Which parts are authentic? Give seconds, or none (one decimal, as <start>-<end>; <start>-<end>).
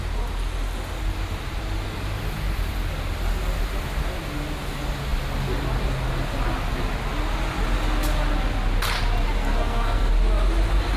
0.0-9.4; 10.1-11.0